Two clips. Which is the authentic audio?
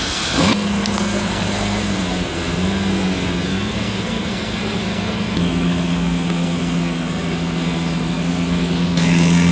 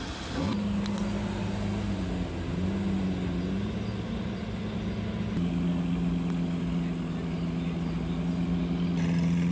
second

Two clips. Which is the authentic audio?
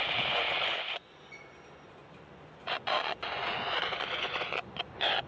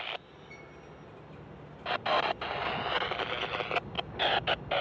second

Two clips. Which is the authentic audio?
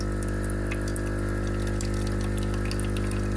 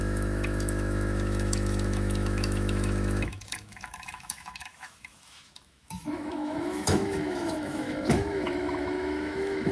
first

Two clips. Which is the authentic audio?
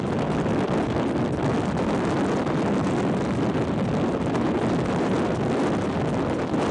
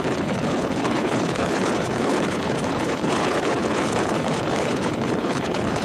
first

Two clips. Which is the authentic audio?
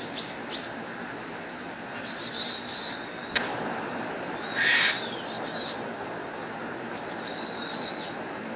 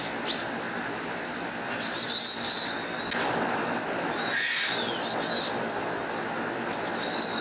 second